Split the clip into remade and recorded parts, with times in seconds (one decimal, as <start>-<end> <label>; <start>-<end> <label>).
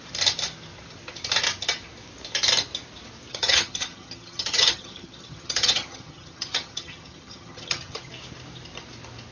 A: 0.0-3.3 recorded; 3.3-8.1 remade; 8.1-9.3 recorded